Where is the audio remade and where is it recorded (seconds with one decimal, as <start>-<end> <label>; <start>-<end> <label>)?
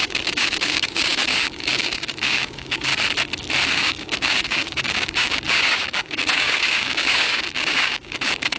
0.0-2.9 remade; 2.9-3.7 recorded; 3.7-8.6 remade